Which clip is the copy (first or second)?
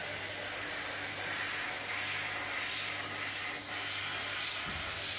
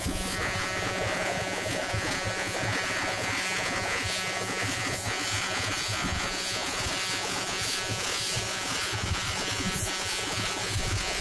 second